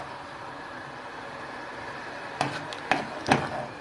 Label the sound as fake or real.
real